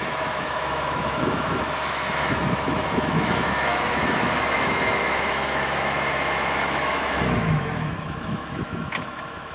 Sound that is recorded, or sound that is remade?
remade